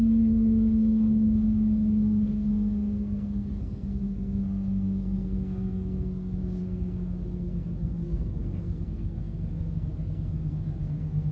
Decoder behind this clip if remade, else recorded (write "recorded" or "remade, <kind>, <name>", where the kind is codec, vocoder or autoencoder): remade, codec, SNAC